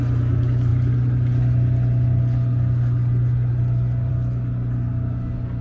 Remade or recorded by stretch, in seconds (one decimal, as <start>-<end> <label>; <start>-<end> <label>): 0.0-5.6 recorded